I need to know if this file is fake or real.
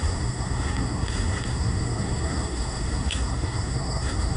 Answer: fake